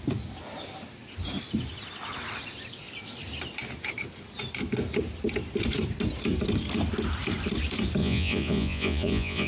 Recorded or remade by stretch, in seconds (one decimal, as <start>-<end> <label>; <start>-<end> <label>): 0.0-8.0 recorded; 8.0-9.5 remade